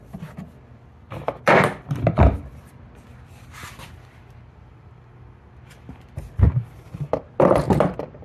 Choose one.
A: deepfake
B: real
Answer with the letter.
B